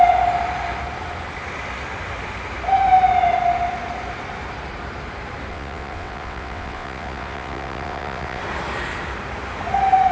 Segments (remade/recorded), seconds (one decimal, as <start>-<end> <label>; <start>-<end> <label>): 0.0-5.5 recorded; 5.5-8.4 remade; 8.4-10.1 recorded